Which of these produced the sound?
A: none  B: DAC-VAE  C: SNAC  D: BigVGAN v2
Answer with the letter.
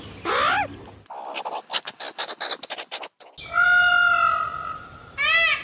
A